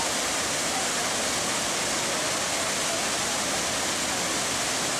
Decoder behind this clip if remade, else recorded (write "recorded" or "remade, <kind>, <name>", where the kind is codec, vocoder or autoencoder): recorded